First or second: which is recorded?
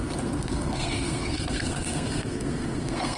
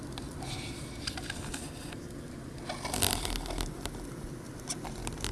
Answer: second